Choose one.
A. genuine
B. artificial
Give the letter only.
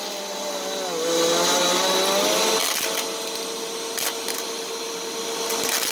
A